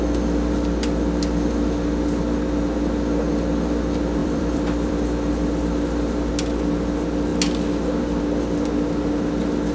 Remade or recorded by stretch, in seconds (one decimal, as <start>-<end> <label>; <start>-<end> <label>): 0.0-4.2 recorded; 4.2-6.3 remade; 6.3-9.7 recorded

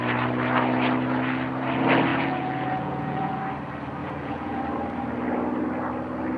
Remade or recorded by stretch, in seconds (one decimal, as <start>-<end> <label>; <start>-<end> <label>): 0.0-2.1 recorded; 2.1-3.4 remade; 3.4-4.0 recorded; 4.0-4.6 remade; 4.6-6.4 recorded

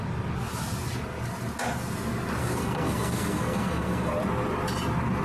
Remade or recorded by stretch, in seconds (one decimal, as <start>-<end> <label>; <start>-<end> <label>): 0.0-2.4 recorded; 2.4-4.1 remade; 4.1-5.2 recorded

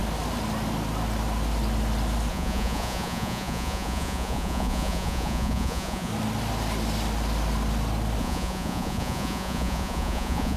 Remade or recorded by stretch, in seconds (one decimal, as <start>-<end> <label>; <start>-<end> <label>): 0.0-2.3 recorded; 2.3-6.1 remade; 6.1-8.2 recorded; 8.2-10.6 remade

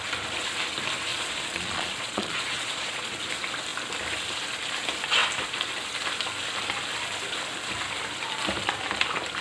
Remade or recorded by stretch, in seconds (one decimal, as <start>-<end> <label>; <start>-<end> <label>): 0.0-1.1 recorded; 1.1-3.1 remade; 3.1-9.4 recorded

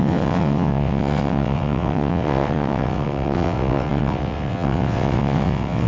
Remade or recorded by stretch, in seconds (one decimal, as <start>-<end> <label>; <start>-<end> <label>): 0.0-5.9 remade